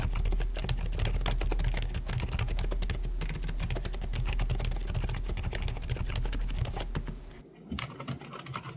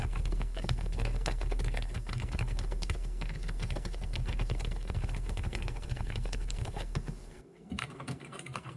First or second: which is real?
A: first